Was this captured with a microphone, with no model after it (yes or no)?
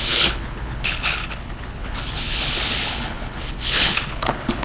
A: no